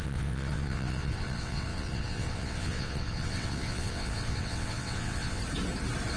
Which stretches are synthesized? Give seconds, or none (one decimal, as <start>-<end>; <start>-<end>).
0.0-5.4